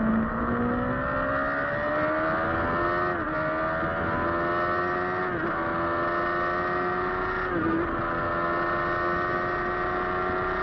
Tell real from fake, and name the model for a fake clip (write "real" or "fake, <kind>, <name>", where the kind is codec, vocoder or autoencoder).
real